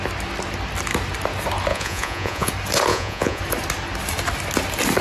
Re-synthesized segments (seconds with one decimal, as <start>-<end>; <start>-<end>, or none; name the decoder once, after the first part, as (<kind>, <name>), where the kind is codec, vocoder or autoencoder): 1.7-2.5 (vocoder, Vocos); 2.9-3.4